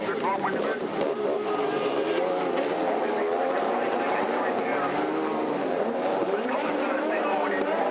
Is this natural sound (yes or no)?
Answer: no